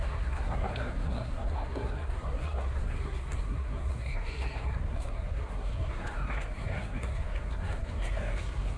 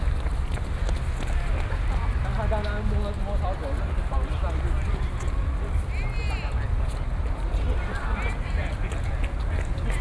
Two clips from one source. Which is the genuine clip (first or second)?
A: second